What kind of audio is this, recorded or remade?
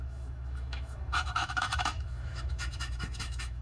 remade